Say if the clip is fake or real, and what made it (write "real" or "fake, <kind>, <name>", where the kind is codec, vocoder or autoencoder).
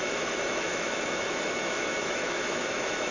fake, autoencoder, DAC-VAE